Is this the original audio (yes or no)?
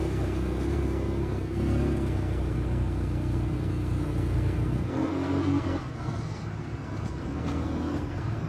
no